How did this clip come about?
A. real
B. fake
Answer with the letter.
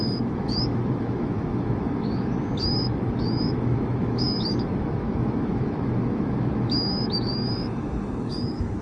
B